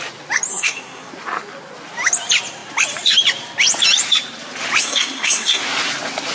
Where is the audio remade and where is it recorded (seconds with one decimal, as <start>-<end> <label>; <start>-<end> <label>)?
0.0-0.5 recorded; 0.5-1.1 remade; 1.1-4.8 recorded; 4.8-5.6 remade; 5.6-6.3 recorded

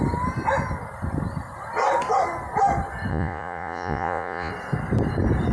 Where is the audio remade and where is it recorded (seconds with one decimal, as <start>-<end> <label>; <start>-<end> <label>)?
0.0-3.1 recorded; 3.1-4.5 remade; 4.5-5.5 recorded